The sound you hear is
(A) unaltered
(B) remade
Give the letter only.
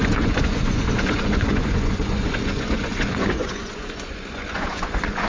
B